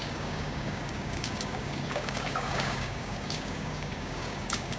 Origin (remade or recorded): remade